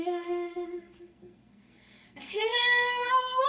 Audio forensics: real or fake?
fake